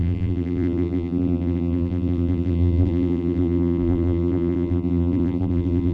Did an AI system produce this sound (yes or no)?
yes